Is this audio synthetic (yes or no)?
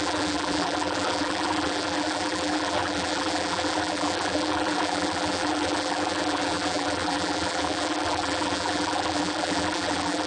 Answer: yes